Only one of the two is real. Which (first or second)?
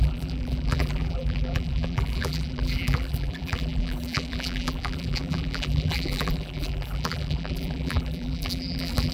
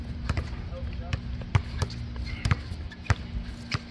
second